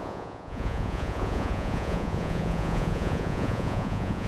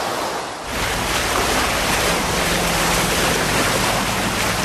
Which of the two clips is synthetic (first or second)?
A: first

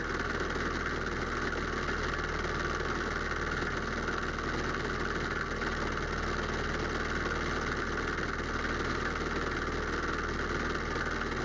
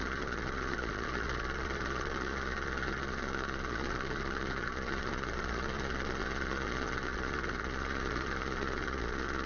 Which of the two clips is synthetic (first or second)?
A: second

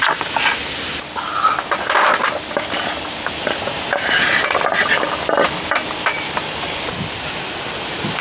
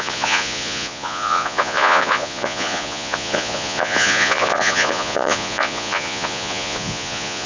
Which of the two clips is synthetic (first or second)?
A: second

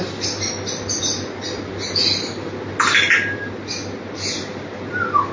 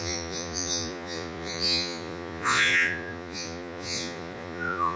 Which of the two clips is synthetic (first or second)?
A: second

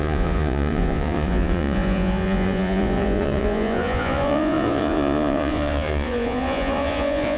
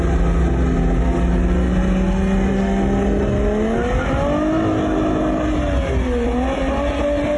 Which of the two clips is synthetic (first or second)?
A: first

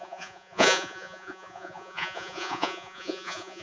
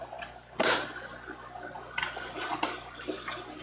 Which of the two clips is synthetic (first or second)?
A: first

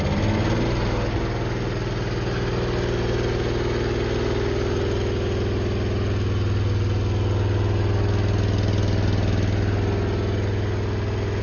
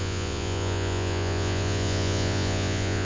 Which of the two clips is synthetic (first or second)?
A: second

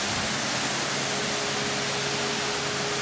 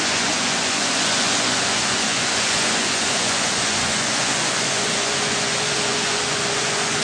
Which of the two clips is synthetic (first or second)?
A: second